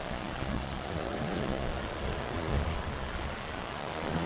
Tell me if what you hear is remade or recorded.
remade